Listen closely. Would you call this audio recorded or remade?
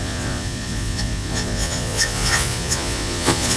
remade